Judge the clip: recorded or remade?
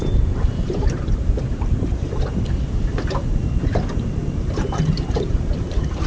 remade